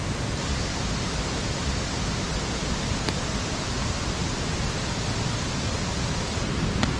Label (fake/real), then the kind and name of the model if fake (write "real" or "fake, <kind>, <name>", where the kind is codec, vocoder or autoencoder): real